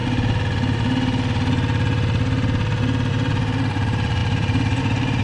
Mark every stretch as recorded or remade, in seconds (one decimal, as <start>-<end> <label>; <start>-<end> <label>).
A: 0.0-3.1 recorded; 3.1-5.2 remade

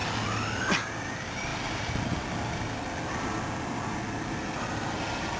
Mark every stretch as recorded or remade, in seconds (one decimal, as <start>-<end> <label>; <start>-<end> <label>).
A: 0.0-5.4 remade